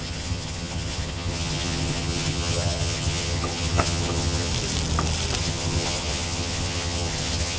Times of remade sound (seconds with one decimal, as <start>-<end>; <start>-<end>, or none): 0.0-4.5; 5.4-7.6